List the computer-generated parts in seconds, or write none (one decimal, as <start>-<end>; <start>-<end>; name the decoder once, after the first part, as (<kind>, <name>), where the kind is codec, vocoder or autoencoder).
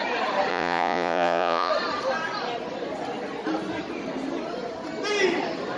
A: 0.5-1.7 (vocoder, Vocos)